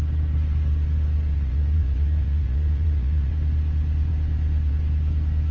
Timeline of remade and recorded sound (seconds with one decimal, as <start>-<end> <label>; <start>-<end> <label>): 0.0-1.3 recorded; 1.3-3.3 remade; 3.3-5.5 recorded